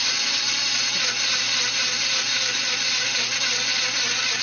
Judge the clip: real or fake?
real